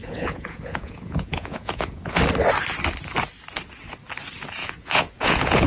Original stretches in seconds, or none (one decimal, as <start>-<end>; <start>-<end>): 2.2-4.6